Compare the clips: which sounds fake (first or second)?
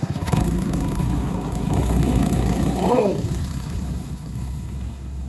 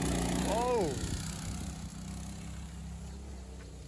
first